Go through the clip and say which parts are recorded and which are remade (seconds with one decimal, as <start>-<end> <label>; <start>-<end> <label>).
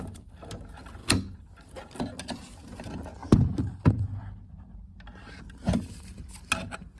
0.0-3.2 recorded; 3.2-4.1 remade; 4.1-5.6 recorded; 5.6-6.4 remade; 6.4-7.0 recorded